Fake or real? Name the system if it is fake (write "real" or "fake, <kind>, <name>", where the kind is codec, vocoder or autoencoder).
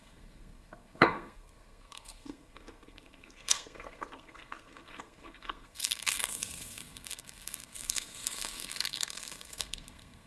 fake, codec, SNAC